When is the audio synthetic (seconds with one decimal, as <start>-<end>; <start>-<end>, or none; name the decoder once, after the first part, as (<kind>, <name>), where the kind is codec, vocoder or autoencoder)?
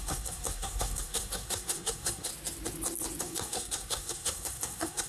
0.0-2.3 (codec, SNAC); 3.2-5.1